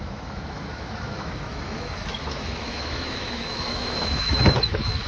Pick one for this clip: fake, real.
fake